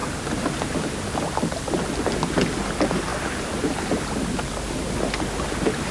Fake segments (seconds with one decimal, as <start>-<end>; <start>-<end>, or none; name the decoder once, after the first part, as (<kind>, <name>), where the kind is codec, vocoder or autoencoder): none